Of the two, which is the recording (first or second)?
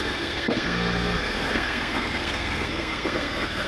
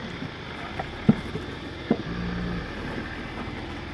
second